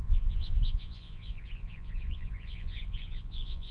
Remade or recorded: remade